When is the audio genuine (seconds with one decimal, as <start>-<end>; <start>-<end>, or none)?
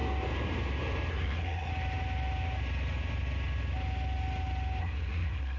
0.0-1.1; 1.7-4.8